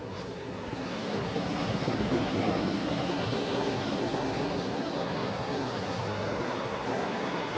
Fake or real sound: fake